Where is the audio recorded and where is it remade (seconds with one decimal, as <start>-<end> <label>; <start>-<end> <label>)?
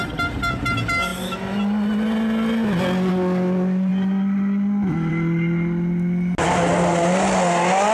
0.0-7.9 recorded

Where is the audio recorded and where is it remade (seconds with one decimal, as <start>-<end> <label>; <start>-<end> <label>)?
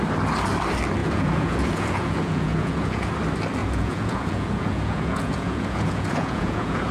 0.0-1.0 recorded; 1.0-3.1 remade; 3.1-3.6 recorded; 3.6-6.9 remade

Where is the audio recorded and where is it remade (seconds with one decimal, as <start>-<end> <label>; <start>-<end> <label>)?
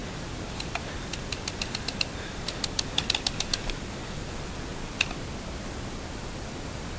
0.0-4.7 remade; 4.7-5.9 recorded; 5.9-7.0 remade